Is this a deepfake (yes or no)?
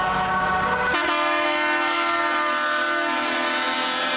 no